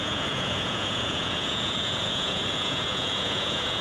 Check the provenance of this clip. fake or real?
fake